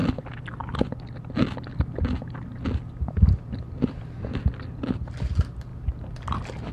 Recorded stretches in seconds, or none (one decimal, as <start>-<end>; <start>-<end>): 0.0-6.7